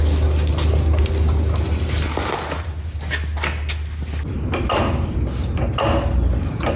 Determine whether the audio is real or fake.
real